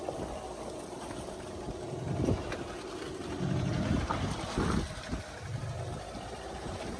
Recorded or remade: recorded